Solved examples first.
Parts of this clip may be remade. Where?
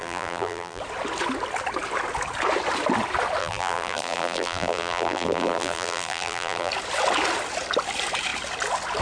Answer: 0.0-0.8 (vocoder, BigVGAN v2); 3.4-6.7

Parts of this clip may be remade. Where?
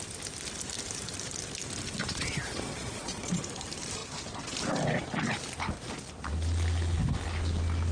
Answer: 2.0-3.4 (vocoder, Vocos)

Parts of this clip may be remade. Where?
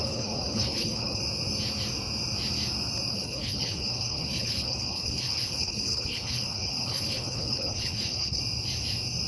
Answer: 0.0-1.2 (codec, HILCodec); 3.1-8.4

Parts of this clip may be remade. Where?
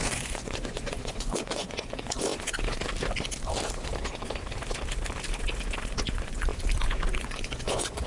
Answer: 0.0-2.3 (vocoder, Vocos); 6.0-6.5; 7.2-8.1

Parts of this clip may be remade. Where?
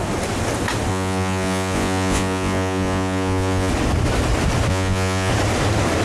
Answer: 0.9-3.7 (vocoder, Vocos); 4.7-5.3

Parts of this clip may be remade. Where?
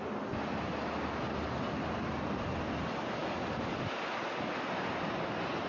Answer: none